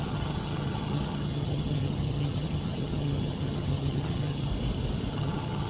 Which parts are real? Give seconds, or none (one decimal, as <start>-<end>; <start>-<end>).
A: 4.5-5.1

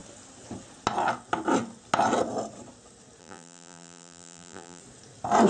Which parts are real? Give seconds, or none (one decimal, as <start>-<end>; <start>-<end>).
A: 0.0-3.2; 4.8-5.5

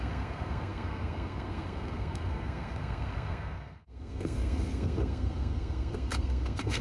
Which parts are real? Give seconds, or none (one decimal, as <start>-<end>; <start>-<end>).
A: none

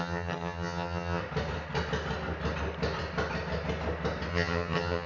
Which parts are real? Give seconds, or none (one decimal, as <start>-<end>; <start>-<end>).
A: 1.2-4.3

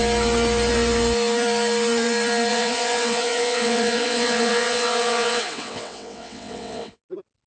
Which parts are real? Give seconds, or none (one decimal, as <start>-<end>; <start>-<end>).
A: 0.0-2.5; 7.0-7.5